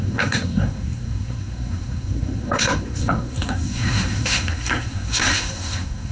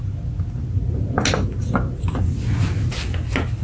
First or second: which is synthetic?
first